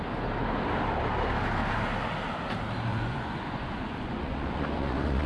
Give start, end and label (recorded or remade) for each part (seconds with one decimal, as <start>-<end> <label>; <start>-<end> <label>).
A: 0.0-2.9 recorded; 2.9-5.3 remade